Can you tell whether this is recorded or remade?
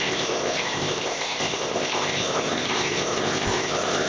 remade